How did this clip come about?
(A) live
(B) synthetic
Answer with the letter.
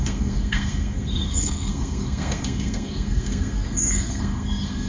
B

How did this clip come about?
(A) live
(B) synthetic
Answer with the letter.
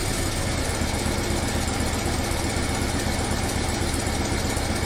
A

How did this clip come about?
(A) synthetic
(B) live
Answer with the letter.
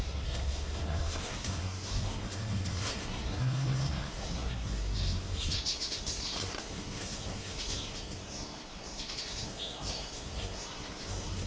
A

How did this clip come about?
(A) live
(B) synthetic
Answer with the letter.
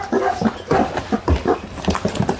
A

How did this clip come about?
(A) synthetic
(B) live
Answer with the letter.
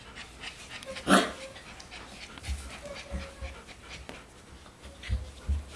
B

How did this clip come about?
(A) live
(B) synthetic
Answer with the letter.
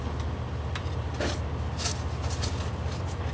A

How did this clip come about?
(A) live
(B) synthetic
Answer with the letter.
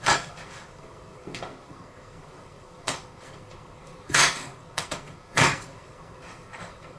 B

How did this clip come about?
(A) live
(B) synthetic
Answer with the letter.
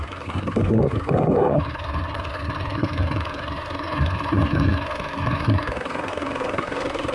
B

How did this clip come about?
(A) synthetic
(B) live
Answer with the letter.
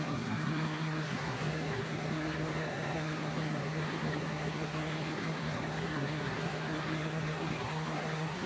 A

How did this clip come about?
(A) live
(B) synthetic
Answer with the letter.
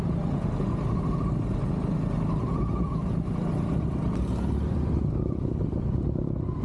A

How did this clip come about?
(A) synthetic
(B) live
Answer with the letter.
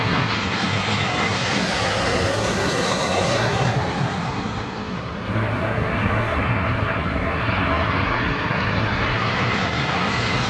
A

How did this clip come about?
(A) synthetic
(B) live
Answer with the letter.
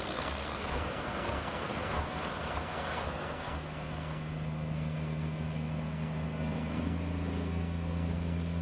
A